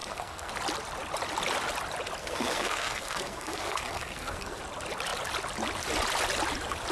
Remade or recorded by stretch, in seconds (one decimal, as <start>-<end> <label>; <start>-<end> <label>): 0.0-0.5 remade; 0.5-2.2 recorded; 2.2-4.6 remade; 4.6-6.9 recorded